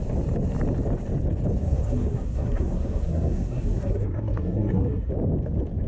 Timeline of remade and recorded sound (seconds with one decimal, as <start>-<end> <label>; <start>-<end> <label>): 0.0-1.6 recorded; 1.6-5.1 remade; 5.1-5.9 recorded